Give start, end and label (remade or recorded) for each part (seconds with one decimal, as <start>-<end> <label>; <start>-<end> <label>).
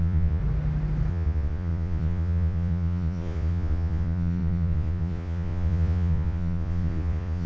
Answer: 0.0-0.4 remade; 0.4-1.1 recorded; 1.1-7.5 remade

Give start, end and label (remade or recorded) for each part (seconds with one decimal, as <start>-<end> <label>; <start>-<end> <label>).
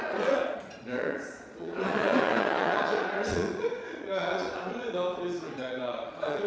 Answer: 0.0-6.5 remade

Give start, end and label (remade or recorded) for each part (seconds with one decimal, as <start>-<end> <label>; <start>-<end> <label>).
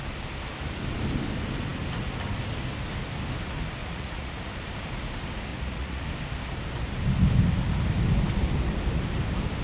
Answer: 0.0-3.8 recorded; 3.8-4.5 remade; 4.5-5.5 recorded; 5.5-6.0 remade; 6.0-9.6 recorded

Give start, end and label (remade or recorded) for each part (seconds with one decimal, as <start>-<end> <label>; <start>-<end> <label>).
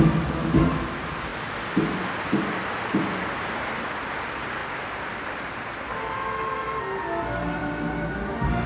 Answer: 0.0-8.7 recorded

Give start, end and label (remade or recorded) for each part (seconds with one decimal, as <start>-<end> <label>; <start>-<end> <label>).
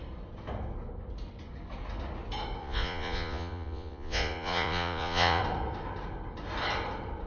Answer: 0.0-2.6 recorded; 2.6-5.4 remade; 5.4-7.3 recorded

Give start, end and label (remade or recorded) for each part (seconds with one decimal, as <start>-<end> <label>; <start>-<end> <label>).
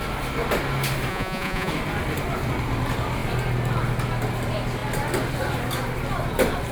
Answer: 0.0-1.1 recorded; 1.1-1.7 remade; 1.7-6.7 recorded